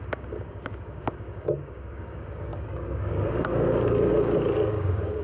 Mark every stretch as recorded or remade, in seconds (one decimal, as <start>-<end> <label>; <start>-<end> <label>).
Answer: 0.0-5.2 remade